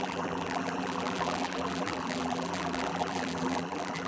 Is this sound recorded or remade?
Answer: remade